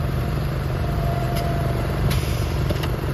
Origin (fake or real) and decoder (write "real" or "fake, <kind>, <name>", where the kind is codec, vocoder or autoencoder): fake, vocoder, BigVGAN v2